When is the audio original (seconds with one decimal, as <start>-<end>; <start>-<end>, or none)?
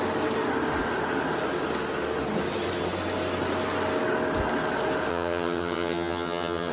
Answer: 0.0-5.1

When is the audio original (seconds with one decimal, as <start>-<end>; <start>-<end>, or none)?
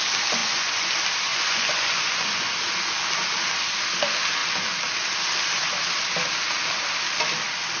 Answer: 0.0-0.4; 0.9-1.3; 2.5-7.8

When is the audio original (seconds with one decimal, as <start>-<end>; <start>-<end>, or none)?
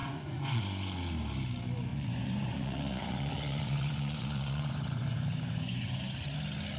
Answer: 0.6-1.9; 6.0-6.8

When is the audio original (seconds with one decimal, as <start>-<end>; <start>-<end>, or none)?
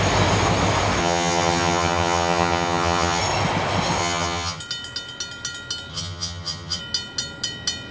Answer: 0.0-1.0; 3.2-4.0; 4.6-5.9; 6.8-7.9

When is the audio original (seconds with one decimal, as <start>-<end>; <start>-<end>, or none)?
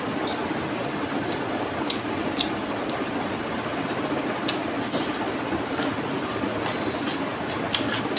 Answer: 0.0-8.2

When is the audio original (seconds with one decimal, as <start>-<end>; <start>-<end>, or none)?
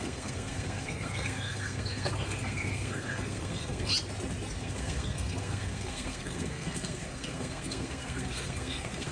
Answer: 3.9-4.6